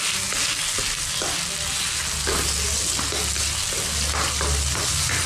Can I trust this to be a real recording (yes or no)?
yes